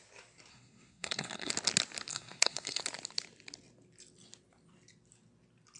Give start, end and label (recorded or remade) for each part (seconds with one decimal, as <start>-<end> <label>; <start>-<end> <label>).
0.0-0.5 recorded; 0.5-1.5 remade; 1.5-2.1 recorded; 2.1-2.8 remade; 2.8-5.8 recorded